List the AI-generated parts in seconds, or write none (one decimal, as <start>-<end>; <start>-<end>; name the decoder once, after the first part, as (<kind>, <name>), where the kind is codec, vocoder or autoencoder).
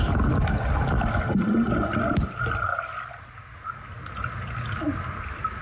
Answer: none